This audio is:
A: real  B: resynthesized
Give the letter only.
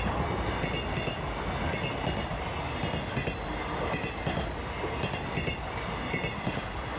A